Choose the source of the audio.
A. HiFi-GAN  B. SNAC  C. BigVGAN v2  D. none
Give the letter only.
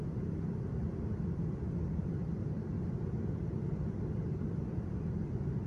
C